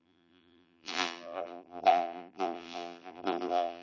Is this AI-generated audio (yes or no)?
yes